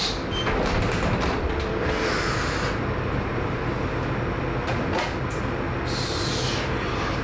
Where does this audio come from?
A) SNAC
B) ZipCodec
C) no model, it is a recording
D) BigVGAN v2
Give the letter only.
C